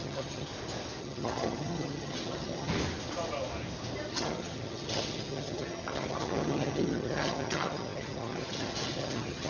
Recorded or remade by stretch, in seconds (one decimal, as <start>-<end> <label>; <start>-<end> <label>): 0.0-0.5 remade; 0.5-1.0 recorded; 1.0-2.7 remade; 2.7-4.1 recorded; 4.1-9.5 remade